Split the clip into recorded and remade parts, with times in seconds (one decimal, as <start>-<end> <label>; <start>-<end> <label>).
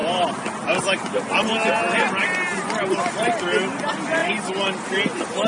0.0-5.5 recorded